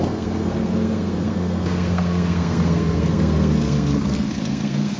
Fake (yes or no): yes